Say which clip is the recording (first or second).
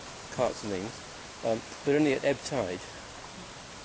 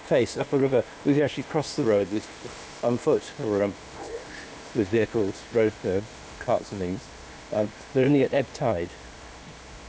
first